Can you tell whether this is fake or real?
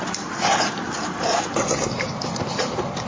fake